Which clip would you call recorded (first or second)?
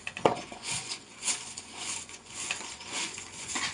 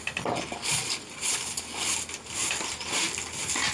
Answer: second